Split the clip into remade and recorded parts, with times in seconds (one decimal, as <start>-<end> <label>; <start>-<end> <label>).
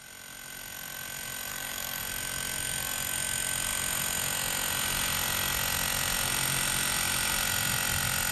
0.0-1.5 recorded; 1.5-2.0 remade; 2.0-8.3 recorded